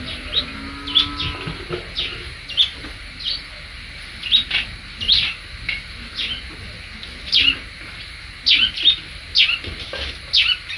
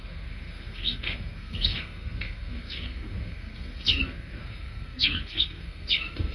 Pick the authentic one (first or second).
first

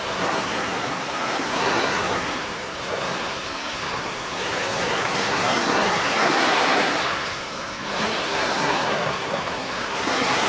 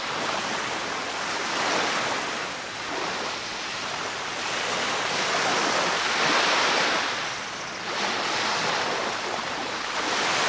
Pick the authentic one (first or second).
second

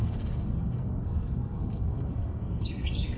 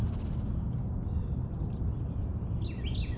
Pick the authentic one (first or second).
second